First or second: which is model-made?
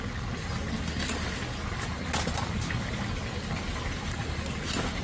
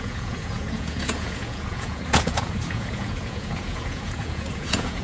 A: second